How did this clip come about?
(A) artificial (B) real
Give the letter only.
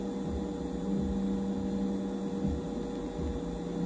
B